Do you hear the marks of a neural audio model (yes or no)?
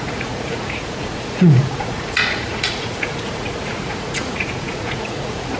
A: yes